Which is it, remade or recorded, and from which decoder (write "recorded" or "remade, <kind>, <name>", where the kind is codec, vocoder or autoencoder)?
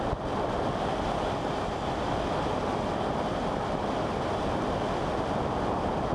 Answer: recorded